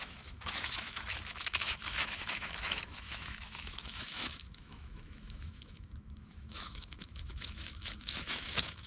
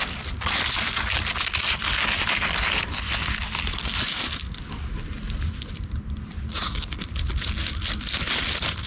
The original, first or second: second